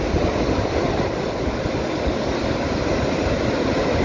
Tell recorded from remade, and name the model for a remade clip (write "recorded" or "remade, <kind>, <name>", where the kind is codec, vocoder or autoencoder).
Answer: recorded